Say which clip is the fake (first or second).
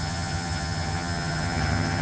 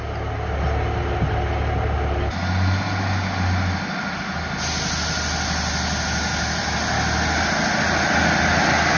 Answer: first